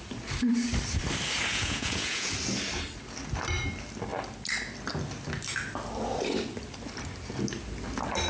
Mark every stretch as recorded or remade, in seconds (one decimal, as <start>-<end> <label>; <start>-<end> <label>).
0.0-1.5 recorded; 1.5-2.3 remade; 2.3-8.3 recorded